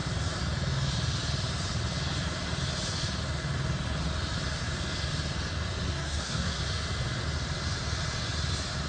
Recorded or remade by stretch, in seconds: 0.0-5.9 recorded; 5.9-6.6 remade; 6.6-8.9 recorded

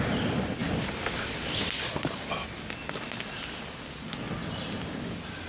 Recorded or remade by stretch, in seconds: 0.0-5.5 recorded

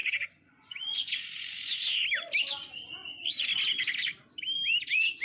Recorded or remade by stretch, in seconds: 0.0-1.4 remade; 1.4-5.2 recorded